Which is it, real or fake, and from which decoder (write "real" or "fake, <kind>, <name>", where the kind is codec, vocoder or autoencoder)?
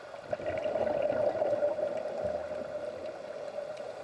real